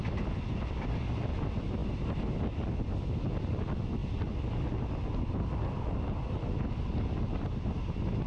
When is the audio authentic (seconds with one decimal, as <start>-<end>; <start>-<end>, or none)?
0.0-8.3